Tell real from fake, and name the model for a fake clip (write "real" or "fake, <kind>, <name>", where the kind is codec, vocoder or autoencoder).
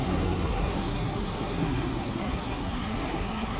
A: fake, codec, SNAC